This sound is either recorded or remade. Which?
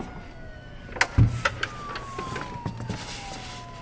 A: recorded